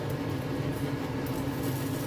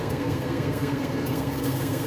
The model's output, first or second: second